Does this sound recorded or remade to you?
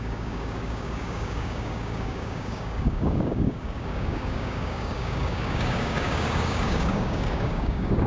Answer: remade